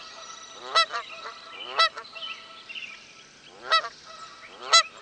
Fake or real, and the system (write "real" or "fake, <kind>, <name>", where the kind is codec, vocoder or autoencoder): real